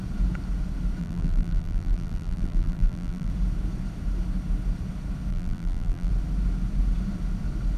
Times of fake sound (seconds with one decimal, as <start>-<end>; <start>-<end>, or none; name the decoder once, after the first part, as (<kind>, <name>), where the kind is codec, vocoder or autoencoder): 1.0-3.3 (vocoder, BigVGAN v2); 5.3-6.1